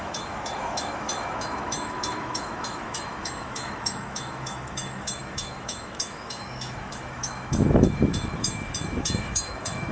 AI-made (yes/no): yes